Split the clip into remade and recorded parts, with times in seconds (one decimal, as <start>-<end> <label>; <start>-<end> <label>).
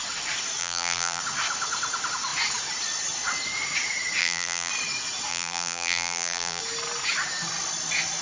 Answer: 0.0-0.6 recorded; 0.6-1.2 remade; 1.2-4.2 recorded; 4.2-4.7 remade; 4.7-5.3 recorded; 5.3-6.6 remade; 6.6-8.2 recorded